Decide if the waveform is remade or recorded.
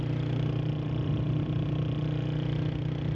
recorded